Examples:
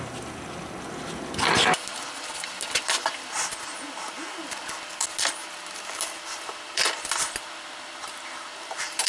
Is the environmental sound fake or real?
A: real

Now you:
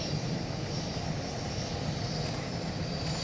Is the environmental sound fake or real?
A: real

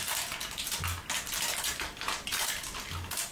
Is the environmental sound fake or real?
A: real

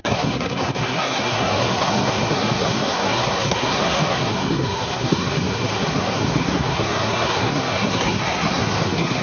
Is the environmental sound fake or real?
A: fake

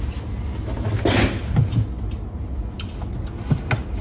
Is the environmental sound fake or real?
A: real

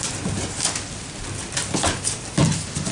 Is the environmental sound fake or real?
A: real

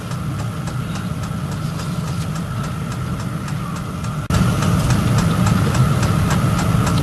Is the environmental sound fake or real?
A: real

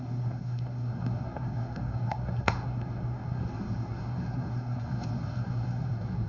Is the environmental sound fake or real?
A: fake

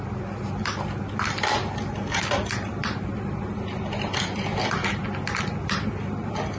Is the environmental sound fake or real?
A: real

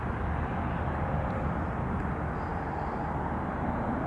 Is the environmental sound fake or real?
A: real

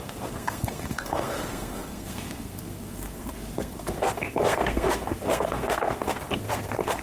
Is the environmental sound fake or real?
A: fake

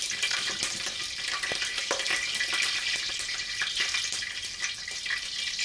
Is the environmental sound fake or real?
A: real